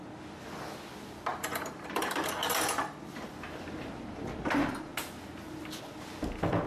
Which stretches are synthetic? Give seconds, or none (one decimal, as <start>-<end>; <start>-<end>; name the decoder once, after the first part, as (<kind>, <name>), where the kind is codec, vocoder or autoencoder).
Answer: 1.3-3.3 (vocoder, BigVGAN v2)